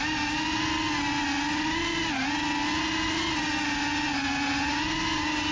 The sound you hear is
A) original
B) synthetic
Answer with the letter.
A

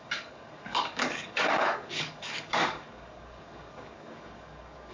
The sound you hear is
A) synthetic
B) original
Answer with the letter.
A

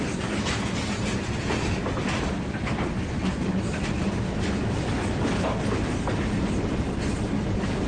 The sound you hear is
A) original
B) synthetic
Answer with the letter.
A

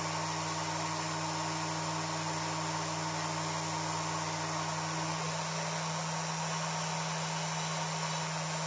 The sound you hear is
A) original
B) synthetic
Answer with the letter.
A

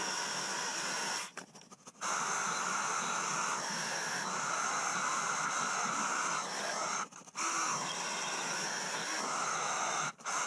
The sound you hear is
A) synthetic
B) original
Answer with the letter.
B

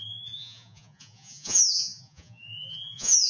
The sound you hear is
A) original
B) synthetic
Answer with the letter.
B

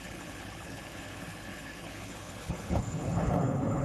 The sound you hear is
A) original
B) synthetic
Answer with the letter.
B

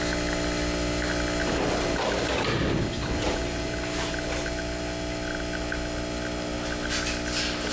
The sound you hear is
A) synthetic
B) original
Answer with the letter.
B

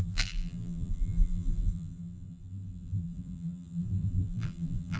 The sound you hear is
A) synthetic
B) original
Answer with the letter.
A